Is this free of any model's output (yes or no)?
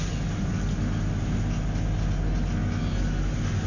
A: yes